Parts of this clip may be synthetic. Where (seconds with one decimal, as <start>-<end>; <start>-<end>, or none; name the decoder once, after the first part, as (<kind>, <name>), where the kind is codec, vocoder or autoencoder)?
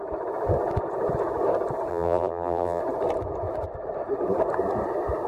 1.9-2.8 (vocoder, BigVGAN v2)